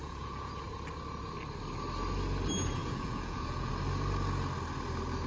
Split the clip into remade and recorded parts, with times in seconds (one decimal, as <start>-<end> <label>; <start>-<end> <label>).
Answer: 0.0-0.5 remade; 0.5-2.8 recorded; 2.8-3.7 remade; 3.7-5.3 recorded